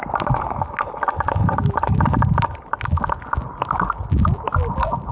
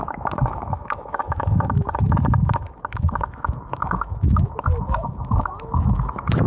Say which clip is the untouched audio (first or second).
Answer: first